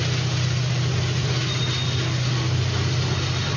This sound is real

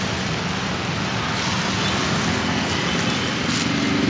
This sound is real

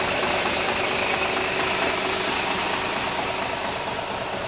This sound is real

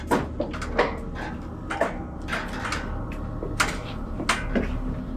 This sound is real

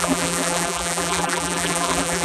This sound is fake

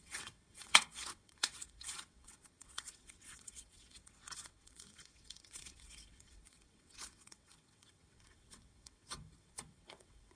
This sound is fake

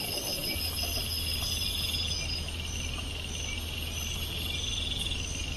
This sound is real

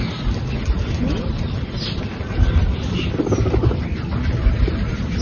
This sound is real